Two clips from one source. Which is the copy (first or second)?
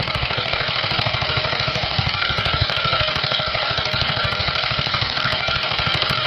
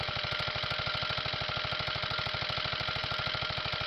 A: first